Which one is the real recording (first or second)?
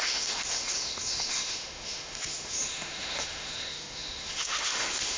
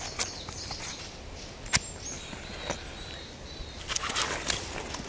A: second